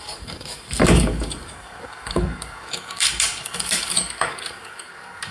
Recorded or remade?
remade